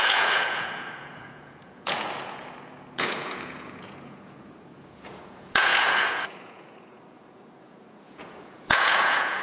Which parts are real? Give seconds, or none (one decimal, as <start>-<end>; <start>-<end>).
none